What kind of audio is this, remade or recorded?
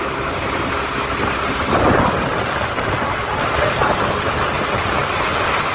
recorded